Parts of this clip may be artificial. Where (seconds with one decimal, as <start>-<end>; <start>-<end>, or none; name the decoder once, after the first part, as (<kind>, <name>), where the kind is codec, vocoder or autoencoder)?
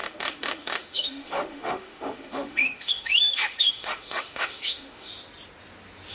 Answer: 0.0-5.1 (autoencoder, DAC-VAE)